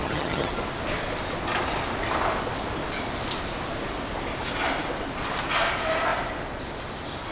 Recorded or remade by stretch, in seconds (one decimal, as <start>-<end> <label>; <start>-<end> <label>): 0.0-0.5 remade; 0.5-7.3 recorded